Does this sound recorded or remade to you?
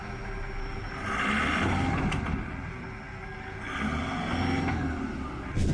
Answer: recorded